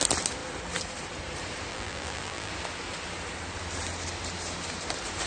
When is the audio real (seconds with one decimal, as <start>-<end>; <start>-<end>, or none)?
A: 0.0-1.7; 2.5-5.3